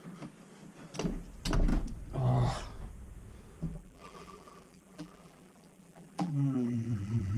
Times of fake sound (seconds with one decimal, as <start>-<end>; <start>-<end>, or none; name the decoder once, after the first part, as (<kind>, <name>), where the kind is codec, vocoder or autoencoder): 3.7-7.4 (vocoder, BigVGAN v2)